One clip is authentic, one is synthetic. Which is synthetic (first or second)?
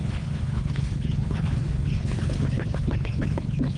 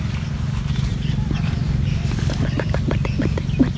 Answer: first